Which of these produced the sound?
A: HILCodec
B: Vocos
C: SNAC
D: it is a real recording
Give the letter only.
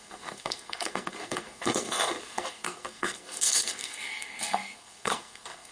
C